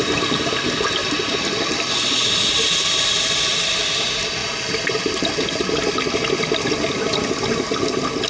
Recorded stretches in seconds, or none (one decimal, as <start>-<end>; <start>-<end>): 0.0-1.0; 4.0-4.4; 6.3-8.3